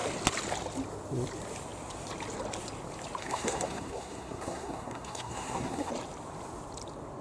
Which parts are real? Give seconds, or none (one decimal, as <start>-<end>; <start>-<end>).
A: 0.0-3.2; 5.9-7.2